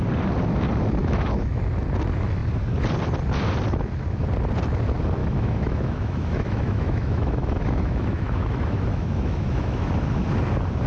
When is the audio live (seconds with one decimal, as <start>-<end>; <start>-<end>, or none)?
0.0-1.0; 1.6-5.2; 9.9-10.9